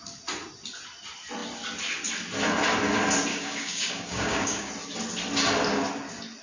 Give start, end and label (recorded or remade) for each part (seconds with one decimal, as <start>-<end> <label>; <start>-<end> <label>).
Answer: 0.0-3.3 recorded; 3.3-4.7 remade; 4.7-6.4 recorded

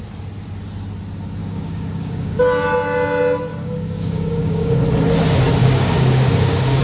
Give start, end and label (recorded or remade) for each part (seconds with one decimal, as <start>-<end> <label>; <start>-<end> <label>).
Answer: 0.0-1.4 recorded; 1.4-2.4 remade; 2.4-3.5 recorded; 3.5-4.8 remade; 4.8-5.6 recorded; 5.6-6.8 remade

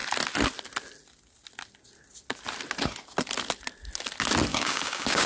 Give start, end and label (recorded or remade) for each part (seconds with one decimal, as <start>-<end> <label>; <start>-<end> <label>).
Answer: 0.0-4.5 recorded; 4.5-5.3 remade

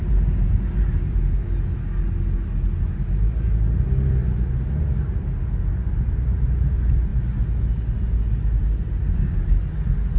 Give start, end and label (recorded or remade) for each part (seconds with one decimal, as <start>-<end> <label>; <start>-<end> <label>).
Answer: 0.0-10.2 recorded